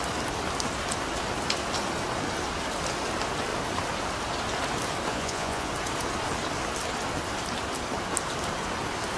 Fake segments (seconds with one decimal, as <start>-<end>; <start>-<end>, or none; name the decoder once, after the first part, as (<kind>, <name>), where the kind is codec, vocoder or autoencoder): 5.1-5.7 (vocoder, Vocos)